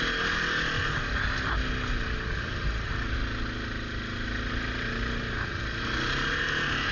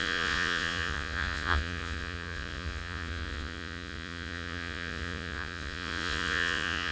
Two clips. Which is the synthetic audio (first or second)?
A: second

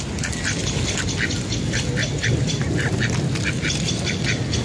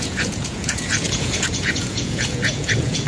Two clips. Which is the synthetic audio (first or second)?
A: second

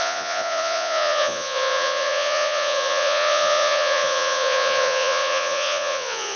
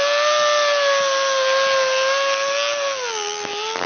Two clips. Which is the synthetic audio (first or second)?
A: first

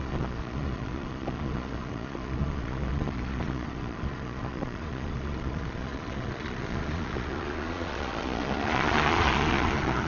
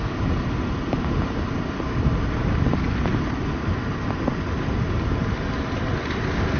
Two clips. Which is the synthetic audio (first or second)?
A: first